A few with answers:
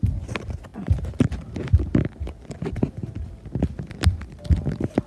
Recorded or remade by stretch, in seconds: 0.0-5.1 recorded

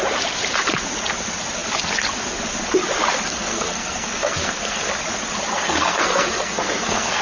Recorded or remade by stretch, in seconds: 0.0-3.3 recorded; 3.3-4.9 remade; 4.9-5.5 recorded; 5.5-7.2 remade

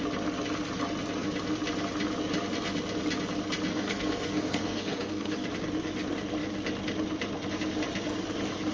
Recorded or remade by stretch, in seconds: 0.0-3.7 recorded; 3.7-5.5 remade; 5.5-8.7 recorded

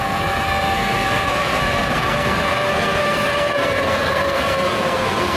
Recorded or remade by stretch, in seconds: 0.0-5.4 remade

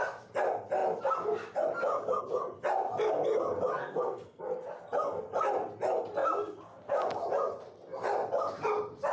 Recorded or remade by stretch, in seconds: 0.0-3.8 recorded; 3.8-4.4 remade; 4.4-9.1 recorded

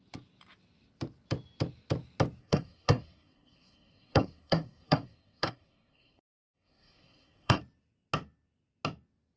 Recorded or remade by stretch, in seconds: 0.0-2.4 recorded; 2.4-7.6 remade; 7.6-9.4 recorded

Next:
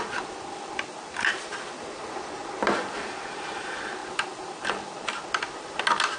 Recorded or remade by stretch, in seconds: 0.0-6.2 recorded